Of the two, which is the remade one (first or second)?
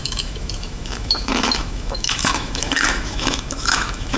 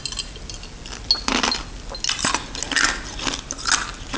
first